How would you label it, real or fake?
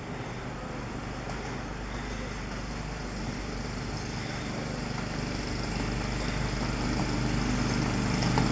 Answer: real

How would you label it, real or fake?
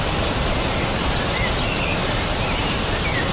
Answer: real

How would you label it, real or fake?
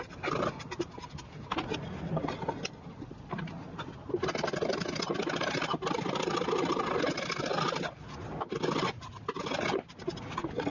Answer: real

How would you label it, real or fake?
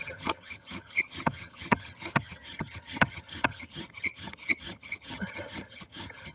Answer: fake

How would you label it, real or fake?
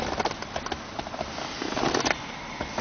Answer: real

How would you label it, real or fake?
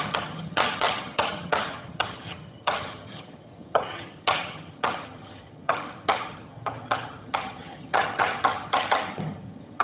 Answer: fake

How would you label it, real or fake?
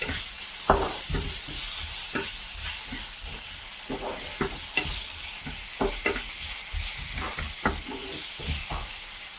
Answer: real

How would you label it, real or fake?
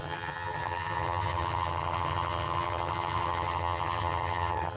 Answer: fake